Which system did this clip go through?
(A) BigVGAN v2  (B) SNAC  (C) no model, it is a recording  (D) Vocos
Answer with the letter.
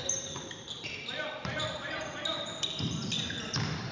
A